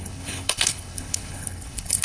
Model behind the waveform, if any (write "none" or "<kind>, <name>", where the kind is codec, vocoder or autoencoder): codec, HILCodec